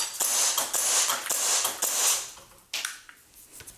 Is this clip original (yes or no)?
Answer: yes